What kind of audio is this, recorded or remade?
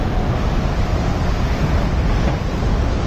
recorded